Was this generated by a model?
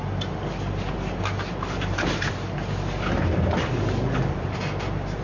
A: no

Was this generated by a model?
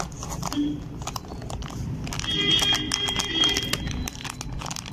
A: no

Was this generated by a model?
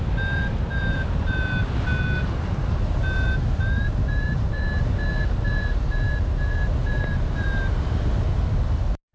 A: no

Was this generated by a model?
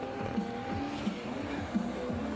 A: no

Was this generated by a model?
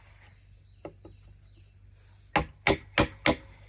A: no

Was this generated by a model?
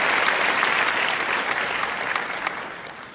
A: no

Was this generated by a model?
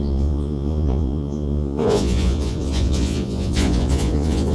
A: yes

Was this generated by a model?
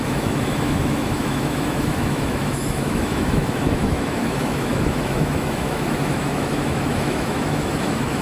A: yes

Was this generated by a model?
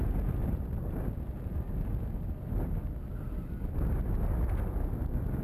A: no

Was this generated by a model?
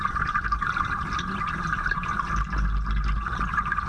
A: no